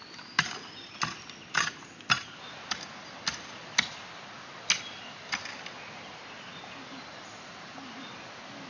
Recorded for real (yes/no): yes